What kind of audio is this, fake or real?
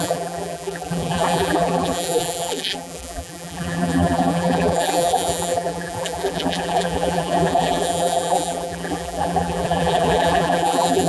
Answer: fake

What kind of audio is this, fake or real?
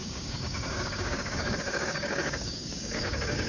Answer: fake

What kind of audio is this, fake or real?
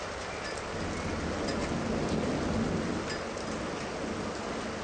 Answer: real